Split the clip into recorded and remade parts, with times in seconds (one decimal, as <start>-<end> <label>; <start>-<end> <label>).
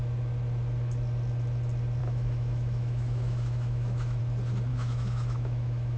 0.0-2.0 recorded; 2.0-4.2 remade; 4.2-4.7 recorded; 4.7-6.0 remade